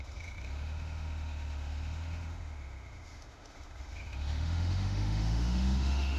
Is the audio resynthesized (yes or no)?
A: yes